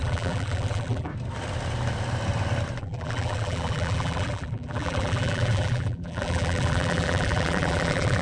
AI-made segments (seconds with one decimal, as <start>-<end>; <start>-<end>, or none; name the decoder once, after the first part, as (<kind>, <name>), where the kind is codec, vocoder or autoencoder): 0.0-1.1 (vocoder, BigVGAN v2); 2.8-8.2